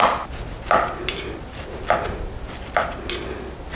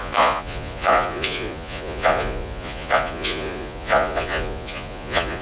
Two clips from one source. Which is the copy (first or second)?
second